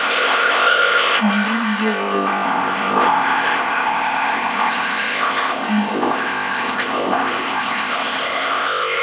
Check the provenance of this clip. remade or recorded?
remade